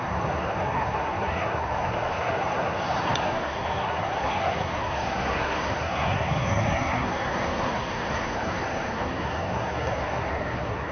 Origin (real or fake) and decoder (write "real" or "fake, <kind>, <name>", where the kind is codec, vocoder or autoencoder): fake, codec, SNAC